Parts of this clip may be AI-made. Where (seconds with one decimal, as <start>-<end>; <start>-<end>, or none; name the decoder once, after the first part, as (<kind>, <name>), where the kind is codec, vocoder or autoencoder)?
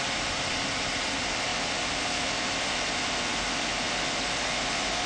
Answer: none